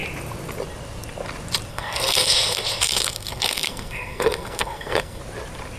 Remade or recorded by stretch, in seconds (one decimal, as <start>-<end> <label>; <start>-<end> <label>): 0.0-1.7 recorded; 1.7-5.2 remade; 5.2-5.8 recorded